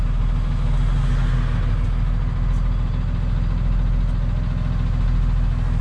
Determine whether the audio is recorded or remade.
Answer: recorded